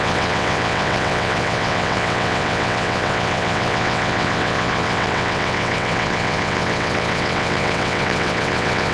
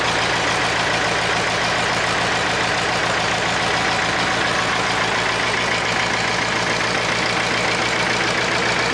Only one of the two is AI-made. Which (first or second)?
first